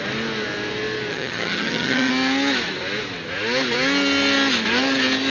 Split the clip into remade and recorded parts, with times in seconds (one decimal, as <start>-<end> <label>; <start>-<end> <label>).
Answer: 0.0-1.1 recorded; 1.1-2.1 remade; 2.1-5.3 recorded

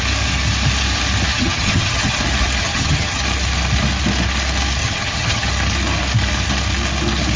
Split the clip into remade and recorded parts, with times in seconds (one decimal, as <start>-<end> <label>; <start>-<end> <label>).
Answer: 0.0-1.3 recorded; 1.3-2.2 remade; 2.2-2.6 recorded; 2.6-3.2 remade; 3.2-4.8 recorded; 4.8-5.5 remade; 5.5-7.4 recorded

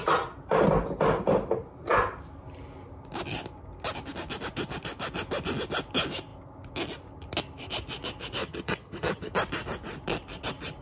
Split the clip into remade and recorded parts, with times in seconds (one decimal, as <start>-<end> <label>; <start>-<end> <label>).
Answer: 0.0-8.4 recorded; 8.4-9.3 remade; 9.3-10.8 recorded